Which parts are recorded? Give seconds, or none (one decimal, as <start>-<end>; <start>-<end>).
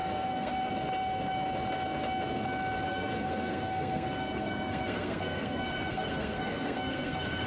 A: 0.7-2.9